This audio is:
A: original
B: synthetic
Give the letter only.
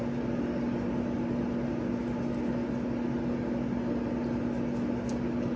A